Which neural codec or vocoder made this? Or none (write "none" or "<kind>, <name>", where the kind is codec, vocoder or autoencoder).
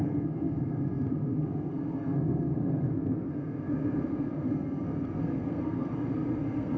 codec, SNAC